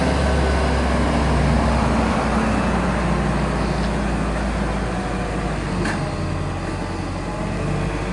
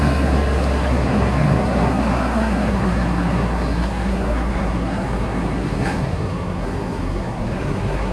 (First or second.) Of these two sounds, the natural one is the first